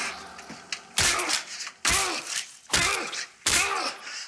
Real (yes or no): yes